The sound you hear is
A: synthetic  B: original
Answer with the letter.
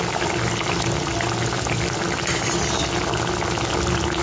B